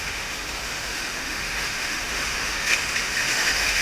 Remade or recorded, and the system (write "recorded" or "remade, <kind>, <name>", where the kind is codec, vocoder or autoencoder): remade, autoencoder, DAC-VAE